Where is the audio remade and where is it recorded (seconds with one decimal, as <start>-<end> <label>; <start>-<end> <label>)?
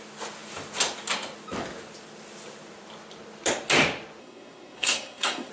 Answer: 0.0-4.2 recorded; 4.2-5.5 remade